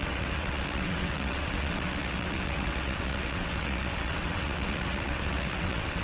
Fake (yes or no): yes